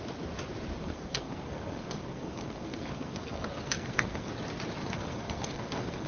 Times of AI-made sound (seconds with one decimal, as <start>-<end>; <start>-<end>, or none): 0.8-4.3; 4.8-6.1